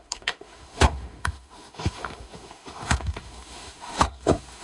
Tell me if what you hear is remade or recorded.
remade